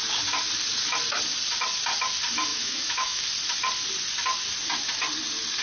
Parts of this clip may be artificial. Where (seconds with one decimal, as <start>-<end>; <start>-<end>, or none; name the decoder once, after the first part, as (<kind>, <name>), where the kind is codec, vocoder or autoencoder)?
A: 2.5-3.2 (autoencoder, DAC-VAE)